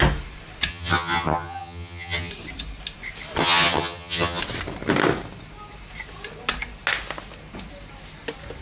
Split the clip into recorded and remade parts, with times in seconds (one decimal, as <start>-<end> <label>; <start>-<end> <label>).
0.0-0.7 recorded; 0.7-2.3 remade; 2.3-3.4 recorded; 3.4-4.4 remade; 4.4-8.6 recorded